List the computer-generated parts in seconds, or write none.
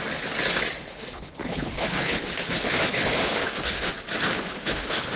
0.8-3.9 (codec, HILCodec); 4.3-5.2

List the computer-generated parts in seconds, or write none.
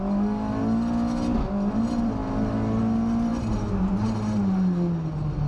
none